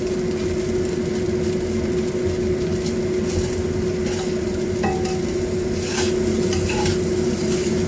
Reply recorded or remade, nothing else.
recorded